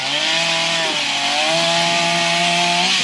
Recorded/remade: recorded